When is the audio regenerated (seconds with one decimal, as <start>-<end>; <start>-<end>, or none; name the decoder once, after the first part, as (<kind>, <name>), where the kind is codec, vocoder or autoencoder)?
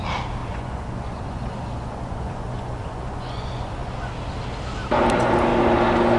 0.4-4.1 (vocoder, Vocos)